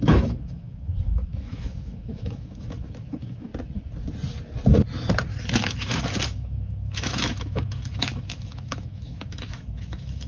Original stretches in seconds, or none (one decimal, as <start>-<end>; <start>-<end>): 3.5-5.5